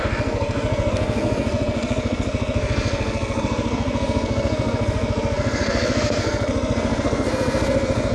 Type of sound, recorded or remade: remade